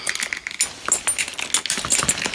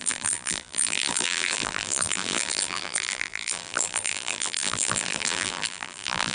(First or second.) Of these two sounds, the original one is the first